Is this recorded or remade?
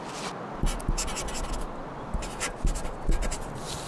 recorded